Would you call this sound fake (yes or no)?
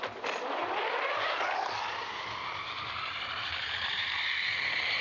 no